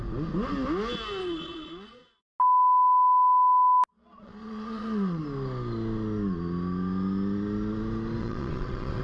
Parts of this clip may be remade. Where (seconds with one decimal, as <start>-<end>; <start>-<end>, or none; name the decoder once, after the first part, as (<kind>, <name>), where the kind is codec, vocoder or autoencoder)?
1.2-2.2 (vocoder, Vocos); 3.9-5.2; 8.2-9.0